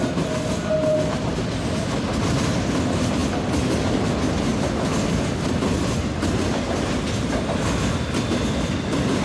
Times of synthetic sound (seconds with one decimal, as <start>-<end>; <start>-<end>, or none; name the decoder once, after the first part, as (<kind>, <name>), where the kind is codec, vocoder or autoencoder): none